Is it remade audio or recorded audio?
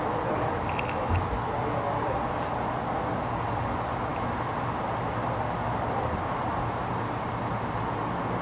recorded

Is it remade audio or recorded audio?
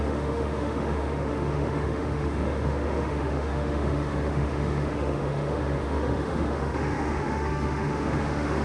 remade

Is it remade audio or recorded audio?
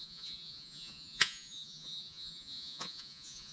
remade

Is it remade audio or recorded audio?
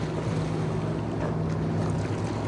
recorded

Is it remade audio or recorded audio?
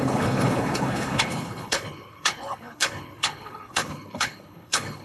remade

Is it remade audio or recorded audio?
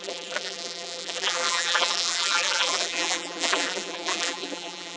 remade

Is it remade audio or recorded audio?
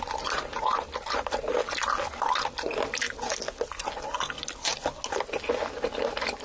recorded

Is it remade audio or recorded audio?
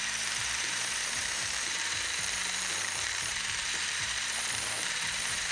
remade